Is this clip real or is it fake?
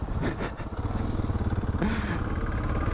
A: real